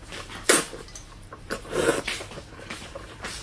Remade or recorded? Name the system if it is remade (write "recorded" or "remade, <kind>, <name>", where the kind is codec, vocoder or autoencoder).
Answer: remade, vocoder, BigVGAN v2